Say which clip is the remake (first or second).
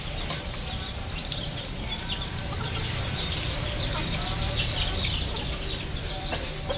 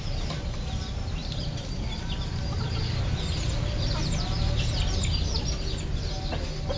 first